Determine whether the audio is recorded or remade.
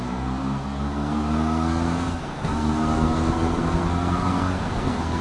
remade